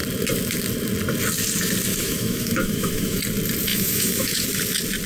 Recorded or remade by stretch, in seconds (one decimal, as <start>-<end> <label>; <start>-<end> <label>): 0.0-1.9 recorded; 1.9-3.2 remade; 3.2-3.7 recorded; 3.7-4.4 remade; 4.4-5.1 recorded